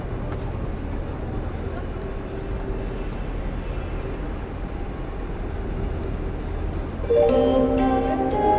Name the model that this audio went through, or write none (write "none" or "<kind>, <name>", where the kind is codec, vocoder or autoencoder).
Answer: none